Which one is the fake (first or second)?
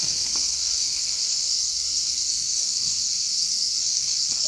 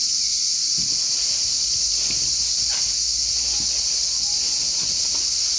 first